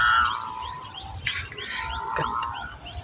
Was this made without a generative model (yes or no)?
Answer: yes